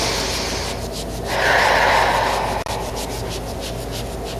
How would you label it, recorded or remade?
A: recorded